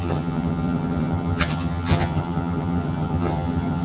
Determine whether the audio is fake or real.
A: fake